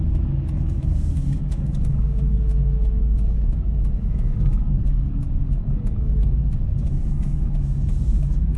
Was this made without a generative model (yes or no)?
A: no